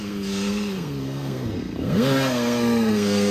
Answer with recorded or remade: remade